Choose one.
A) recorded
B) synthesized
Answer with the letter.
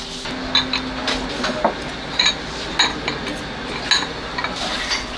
A